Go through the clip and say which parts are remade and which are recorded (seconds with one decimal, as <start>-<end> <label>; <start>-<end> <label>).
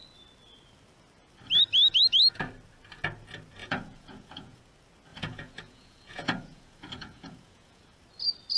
0.0-3.6 recorded; 3.6-4.6 remade; 4.6-5.1 recorded; 5.1-7.8 remade; 7.8-8.6 recorded